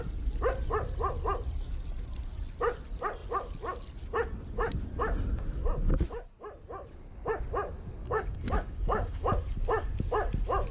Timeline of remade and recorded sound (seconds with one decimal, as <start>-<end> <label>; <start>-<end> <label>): 0.0-8.0 recorded; 8.0-9.3 remade; 9.3-10.7 recorded